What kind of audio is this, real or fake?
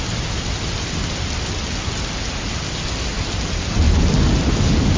real